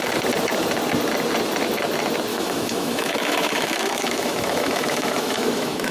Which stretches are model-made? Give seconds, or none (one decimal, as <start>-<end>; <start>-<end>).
2.3-5.9